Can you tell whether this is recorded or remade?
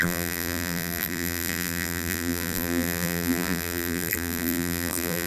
remade